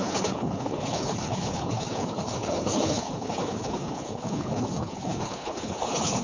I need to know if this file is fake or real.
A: fake